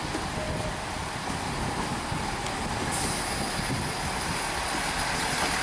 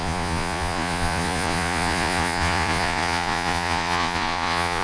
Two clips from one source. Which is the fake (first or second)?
second